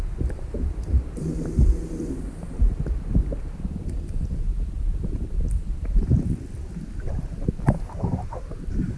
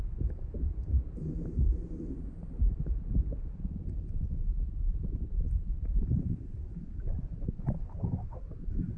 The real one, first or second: first